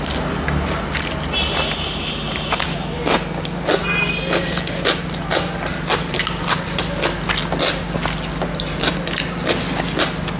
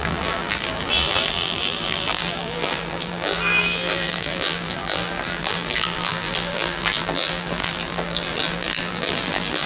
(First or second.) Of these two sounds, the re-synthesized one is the second